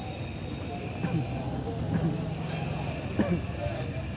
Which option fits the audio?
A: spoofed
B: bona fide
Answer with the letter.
B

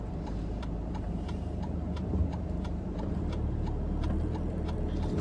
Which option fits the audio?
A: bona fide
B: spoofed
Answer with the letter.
B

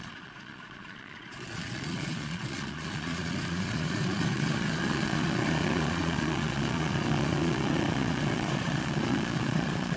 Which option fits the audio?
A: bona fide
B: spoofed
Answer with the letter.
B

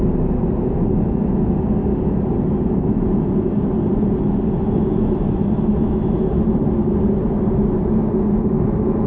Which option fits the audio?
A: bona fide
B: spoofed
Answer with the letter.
A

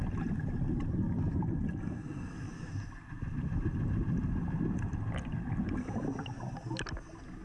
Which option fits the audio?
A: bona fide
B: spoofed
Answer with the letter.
A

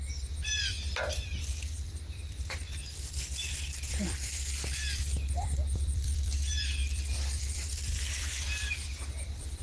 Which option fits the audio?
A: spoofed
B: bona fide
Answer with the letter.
A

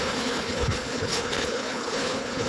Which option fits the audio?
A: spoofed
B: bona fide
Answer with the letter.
A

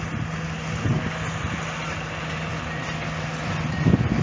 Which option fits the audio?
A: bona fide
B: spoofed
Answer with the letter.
A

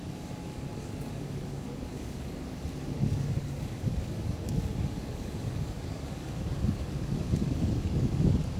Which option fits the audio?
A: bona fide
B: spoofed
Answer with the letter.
B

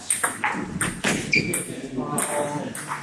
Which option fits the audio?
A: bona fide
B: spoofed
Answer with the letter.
A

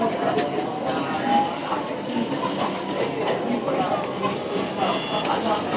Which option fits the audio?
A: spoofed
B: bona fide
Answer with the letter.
B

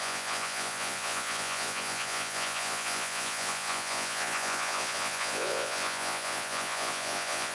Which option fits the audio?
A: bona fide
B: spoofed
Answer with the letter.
B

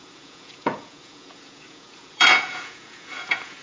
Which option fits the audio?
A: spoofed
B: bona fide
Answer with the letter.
A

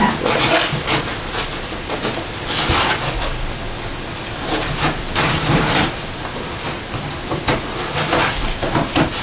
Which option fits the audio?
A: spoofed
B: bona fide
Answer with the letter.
B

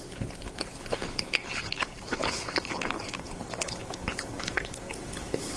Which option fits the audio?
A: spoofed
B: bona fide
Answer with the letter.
A